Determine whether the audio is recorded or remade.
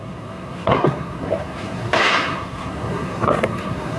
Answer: remade